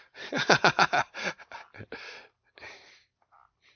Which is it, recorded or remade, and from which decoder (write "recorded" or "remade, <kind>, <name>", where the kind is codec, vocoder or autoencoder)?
remade, vocoder, BigVGAN v2